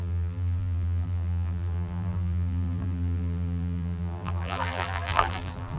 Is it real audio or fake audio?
fake